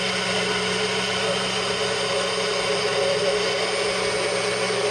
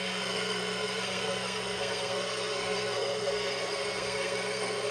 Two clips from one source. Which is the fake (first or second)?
second